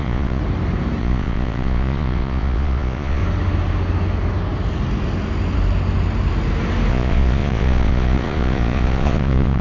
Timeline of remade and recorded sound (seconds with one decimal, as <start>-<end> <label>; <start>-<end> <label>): 0.0-0.4 remade; 0.4-1.0 recorded; 1.0-3.2 remade; 3.2-6.9 recorded; 6.9-9.6 remade

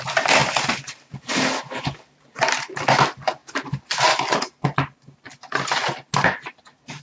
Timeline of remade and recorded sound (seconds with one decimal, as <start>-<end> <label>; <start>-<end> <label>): 0.0-7.0 recorded

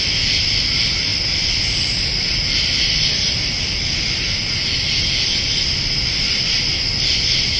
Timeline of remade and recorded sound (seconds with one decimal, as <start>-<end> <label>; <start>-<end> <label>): 0.0-7.6 recorded

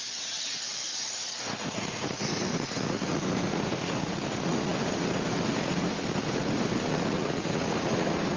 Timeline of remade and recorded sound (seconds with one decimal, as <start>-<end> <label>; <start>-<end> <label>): 0.0-8.4 remade

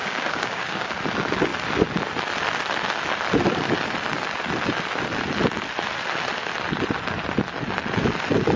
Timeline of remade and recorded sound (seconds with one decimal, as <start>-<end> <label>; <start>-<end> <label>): 0.0-0.9 remade; 0.9-8.6 recorded

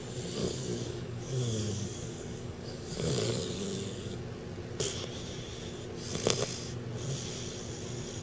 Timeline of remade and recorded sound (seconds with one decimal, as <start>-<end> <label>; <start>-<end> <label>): 0.0-0.4 recorded; 0.4-4.2 remade; 4.2-8.2 recorded

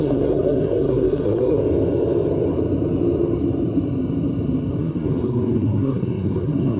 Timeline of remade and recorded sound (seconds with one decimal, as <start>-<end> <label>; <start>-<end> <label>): 0.0-1.6 remade; 1.6-4.8 recorded; 4.8-6.8 remade

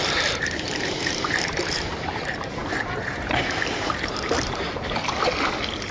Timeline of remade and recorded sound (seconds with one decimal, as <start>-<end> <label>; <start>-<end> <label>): 0.0-2.1 remade; 2.1-2.6 recorded; 2.6-4.7 remade; 4.7-5.9 recorded